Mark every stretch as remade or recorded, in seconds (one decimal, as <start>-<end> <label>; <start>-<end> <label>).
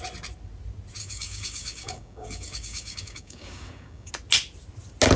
0.0-1.0 recorded; 1.0-4.1 remade; 4.1-5.2 recorded